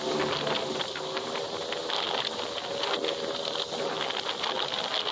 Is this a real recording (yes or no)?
yes